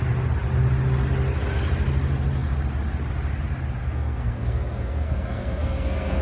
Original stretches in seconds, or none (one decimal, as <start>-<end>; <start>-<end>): 0.0-3.8